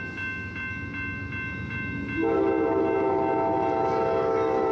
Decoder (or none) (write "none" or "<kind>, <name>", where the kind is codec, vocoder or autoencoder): none